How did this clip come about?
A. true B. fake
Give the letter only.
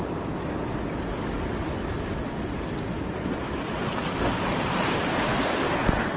A